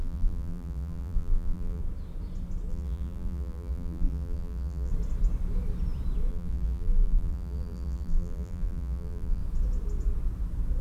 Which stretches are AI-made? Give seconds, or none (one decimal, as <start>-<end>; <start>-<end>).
0.0-1.8; 2.7-4.9; 6.3-9.4